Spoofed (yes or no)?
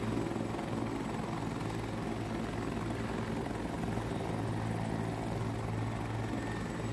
no